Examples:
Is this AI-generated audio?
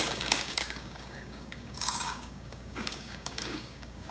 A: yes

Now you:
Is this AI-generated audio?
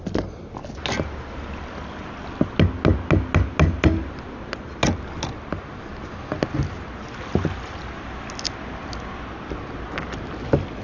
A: no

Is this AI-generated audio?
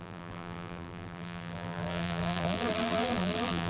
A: yes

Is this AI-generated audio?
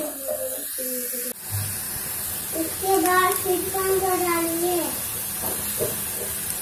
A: no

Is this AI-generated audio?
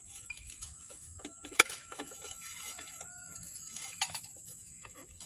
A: yes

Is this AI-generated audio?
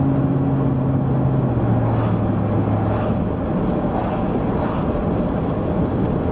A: no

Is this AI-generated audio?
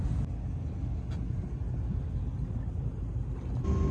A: no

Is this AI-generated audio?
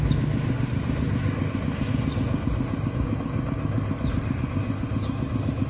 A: no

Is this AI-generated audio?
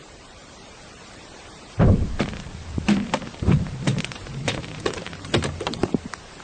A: yes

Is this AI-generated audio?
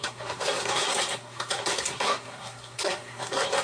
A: yes